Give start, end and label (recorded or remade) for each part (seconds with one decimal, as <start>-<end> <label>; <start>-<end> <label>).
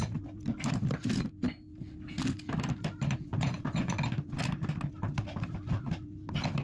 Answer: 0.0-3.3 recorded; 3.3-3.9 remade; 3.9-6.6 recorded